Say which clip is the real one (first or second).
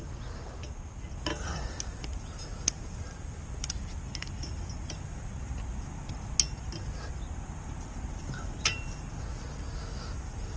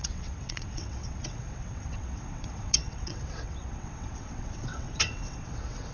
first